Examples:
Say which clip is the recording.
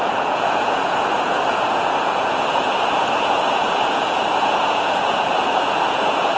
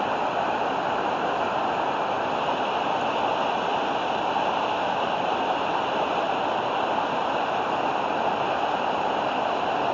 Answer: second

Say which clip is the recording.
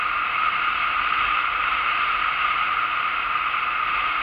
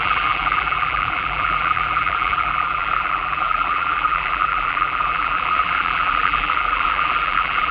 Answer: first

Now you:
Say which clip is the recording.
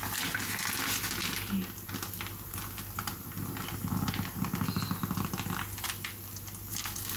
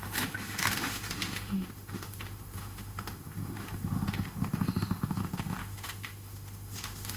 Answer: first